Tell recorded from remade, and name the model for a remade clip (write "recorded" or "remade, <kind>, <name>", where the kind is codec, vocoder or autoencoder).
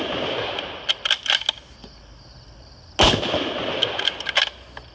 recorded